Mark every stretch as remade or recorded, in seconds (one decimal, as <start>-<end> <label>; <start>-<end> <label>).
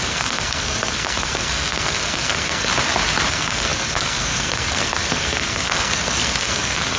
0.0-2.7 remade; 2.7-3.3 recorded; 3.3-7.0 remade